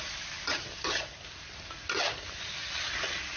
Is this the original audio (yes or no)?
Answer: yes